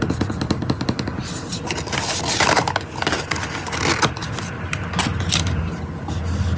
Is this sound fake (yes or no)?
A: no